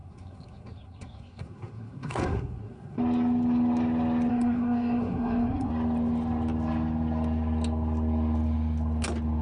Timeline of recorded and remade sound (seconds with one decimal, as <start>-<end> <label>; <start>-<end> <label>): 0.0-3.0 remade; 3.0-4.3 recorded; 4.3-5.7 remade; 5.7-9.4 recorded